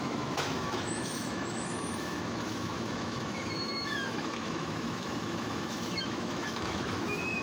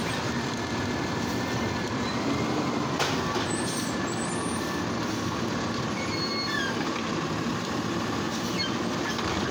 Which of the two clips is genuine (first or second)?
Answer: second